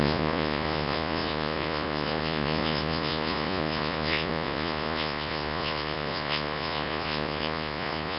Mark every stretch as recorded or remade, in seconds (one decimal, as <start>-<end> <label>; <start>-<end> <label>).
0.0-8.2 remade